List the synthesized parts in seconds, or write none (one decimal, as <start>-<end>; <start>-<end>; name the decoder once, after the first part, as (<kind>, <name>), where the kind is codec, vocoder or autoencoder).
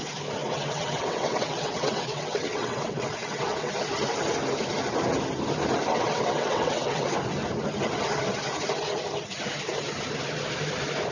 0.4-3.7 (vocoder, WaveNeXt); 5.9-7.1